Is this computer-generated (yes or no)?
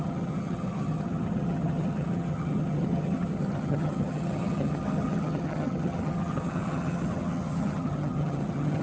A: yes